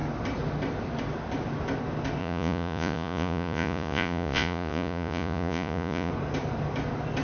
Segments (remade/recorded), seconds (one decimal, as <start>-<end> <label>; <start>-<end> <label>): 0.0-2.2 recorded; 2.2-6.1 remade; 6.1-7.2 recorded